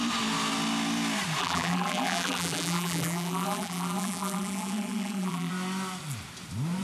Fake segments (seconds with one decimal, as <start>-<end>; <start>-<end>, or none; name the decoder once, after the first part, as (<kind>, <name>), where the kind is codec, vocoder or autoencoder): 1.4-5.5 (vocoder, BigVGAN v2)

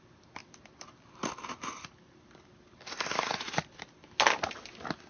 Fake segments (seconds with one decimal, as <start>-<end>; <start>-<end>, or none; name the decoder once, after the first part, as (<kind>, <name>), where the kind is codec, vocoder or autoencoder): 0.4-3.5 (vocoder, BigVGAN v2)

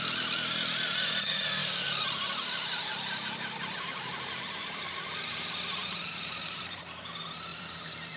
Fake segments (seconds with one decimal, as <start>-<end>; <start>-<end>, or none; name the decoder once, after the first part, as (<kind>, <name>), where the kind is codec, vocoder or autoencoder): 1.6-4.8 (vocoder, BigVGAN v2); 5.8-6.8; 7.5-8.2

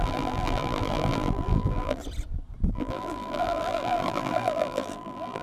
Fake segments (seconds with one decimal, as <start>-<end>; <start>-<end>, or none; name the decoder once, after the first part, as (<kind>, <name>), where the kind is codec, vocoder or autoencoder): 0.0-2.0 (vocoder, BigVGAN v2); 2.7-5.4

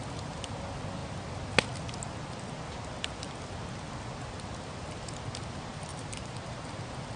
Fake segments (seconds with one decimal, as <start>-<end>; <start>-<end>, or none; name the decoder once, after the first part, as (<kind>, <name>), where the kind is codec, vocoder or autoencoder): 5.9-6.8 (vocoder, BigVGAN v2)

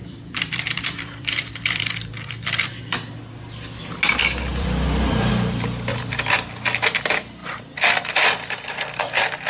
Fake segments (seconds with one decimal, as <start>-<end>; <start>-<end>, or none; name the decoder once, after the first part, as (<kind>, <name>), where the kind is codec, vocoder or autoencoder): 0.0-2.8 (vocoder, BigVGAN v2); 4.5-5.3; 7.4-8.1